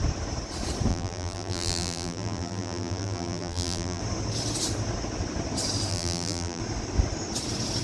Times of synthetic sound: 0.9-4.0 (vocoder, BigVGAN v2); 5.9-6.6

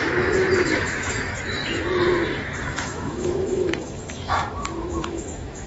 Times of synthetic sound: 0.0-1.6 (autoencoder, DAC-VAE); 2.6-5.7

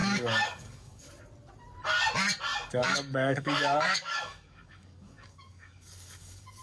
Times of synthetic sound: 0.0-1.1 (codec, DAC); 2.8-6.6

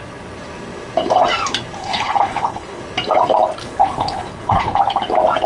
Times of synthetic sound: 1.8-2.8 (codec, HILCodec); 3.6-4.8

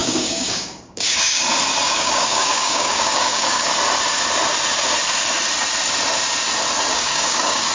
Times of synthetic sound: 0.0-1.4 (codec, DAC); 1.8-3.7; 6.9-7.7